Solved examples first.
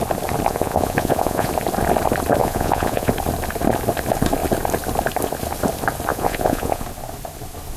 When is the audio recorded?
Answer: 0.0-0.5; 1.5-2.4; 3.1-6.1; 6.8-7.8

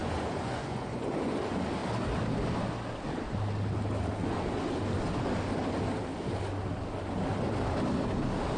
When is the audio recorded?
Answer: 1.4-8.6